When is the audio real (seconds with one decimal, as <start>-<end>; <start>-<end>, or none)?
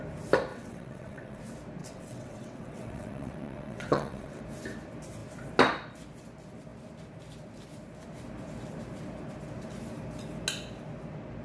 0.0-0.5; 1.4-1.8; 4.4-11.4